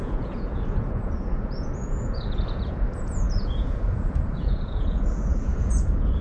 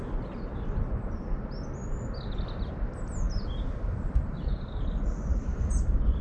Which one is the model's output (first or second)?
first